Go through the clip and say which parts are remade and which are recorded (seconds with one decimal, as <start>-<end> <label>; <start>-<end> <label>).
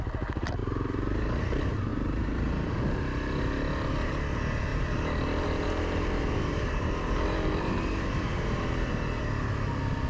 0.0-0.6 recorded; 0.6-1.4 remade; 1.4-1.9 recorded; 1.9-2.7 remade; 2.7-4.7 recorded; 4.7-9.3 remade; 9.3-10.1 recorded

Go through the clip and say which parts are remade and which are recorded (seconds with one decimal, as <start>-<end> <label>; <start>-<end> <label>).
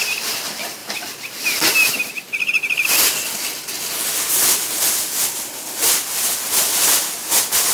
0.0-0.8 recorded; 0.8-2.1 remade; 2.1-7.7 recorded